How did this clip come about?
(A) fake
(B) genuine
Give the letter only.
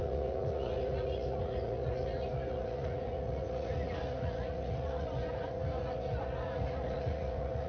A